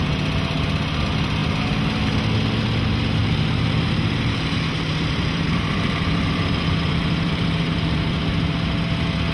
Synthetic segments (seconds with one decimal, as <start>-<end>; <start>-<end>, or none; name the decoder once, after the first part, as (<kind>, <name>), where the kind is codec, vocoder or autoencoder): 3.2-8.2 (vocoder, BigVGAN v2)